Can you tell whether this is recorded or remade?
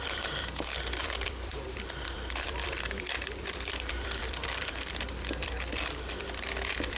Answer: remade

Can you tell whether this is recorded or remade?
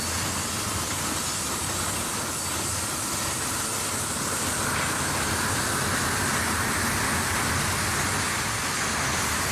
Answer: recorded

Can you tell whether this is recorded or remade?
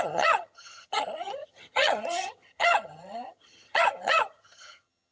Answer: remade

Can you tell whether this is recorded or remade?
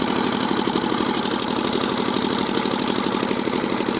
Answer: recorded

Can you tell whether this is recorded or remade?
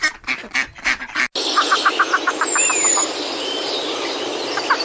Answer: recorded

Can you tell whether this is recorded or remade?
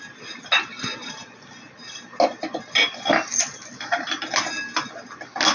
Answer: recorded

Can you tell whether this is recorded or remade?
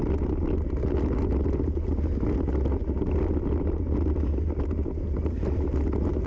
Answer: recorded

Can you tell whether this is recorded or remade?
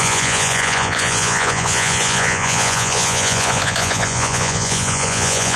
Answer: remade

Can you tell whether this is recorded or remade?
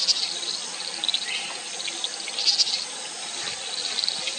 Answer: recorded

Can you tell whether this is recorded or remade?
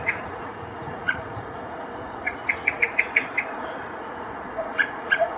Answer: remade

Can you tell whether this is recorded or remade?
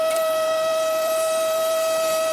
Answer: remade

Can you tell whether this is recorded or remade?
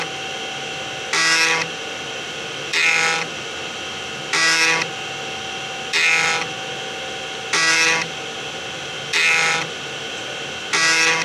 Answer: recorded